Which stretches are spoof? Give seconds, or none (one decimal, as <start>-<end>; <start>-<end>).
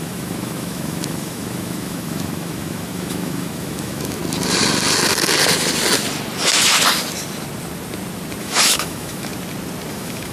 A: 0.0-4.2; 8.4-9.3; 9.9-10.3